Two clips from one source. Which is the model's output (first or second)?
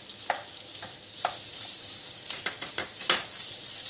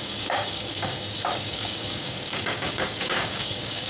second